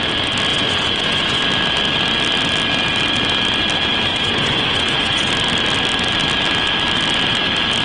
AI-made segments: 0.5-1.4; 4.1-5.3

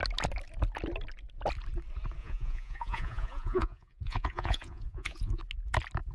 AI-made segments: 2.2-5.4